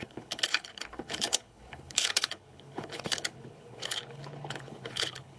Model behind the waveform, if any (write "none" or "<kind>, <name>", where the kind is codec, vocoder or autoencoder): codec, HILCodec